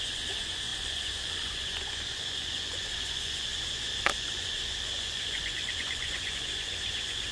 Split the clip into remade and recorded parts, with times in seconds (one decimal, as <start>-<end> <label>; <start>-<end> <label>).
0.0-7.3 remade